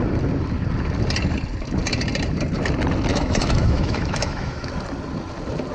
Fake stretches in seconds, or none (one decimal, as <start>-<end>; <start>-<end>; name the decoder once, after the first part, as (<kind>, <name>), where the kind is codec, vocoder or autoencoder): 3.1-4.7 (autoencoder, DAC-VAE)